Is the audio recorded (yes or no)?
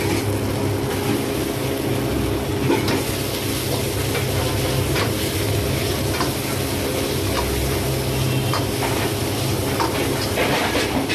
yes